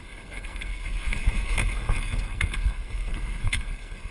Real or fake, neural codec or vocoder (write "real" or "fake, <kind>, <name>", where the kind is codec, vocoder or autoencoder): fake, codec, SNAC